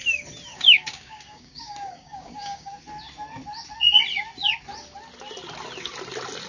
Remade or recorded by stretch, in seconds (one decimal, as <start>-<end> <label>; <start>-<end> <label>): 0.0-0.5 recorded; 0.5-2.8 remade; 2.8-6.5 recorded